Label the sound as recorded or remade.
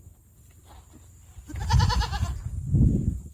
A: recorded